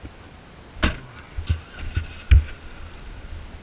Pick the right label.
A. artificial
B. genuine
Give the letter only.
B